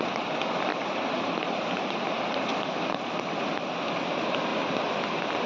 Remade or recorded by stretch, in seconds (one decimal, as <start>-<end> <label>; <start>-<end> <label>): 0.0-2.5 remade; 2.5-4.1 recorded; 4.1-4.5 remade; 4.5-5.5 recorded